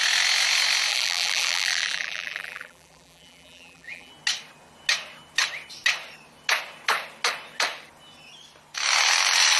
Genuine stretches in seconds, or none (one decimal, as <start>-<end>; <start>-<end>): 0.0-0.9; 4.1-9.6